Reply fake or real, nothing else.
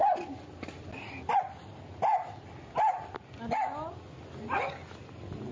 real